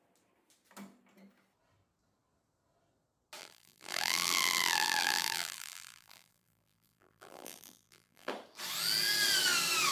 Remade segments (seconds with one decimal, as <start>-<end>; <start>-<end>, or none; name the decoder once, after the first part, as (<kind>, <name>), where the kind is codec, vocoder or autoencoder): 3.4-8.3 (vocoder, BigVGAN v2)